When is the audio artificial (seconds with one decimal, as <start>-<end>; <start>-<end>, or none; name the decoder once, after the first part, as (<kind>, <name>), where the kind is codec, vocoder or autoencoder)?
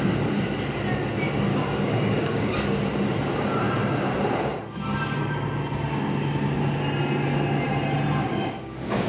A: 1.5-2.8 (codec, DAC); 8.2-9.1